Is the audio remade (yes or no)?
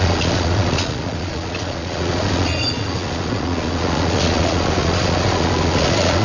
yes